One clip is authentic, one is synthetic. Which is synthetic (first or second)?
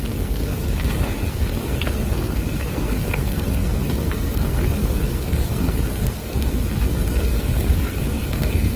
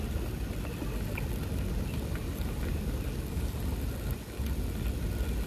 first